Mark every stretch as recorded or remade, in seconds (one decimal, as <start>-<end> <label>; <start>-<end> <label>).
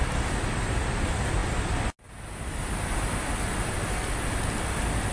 0.0-5.1 recorded